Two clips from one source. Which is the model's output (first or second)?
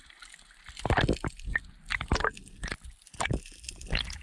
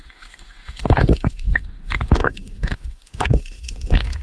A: second